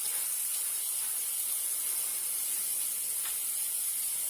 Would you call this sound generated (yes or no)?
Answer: no